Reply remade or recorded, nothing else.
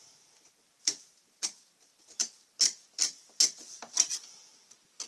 recorded